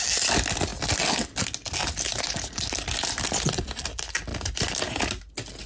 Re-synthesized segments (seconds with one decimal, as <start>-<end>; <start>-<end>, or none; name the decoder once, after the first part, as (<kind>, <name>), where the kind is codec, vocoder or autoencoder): none